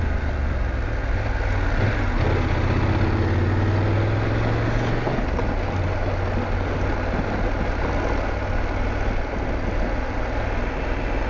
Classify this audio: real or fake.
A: real